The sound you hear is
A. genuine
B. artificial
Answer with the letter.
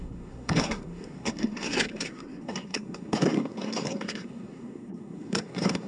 B